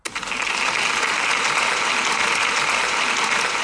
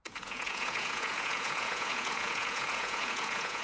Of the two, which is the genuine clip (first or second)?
first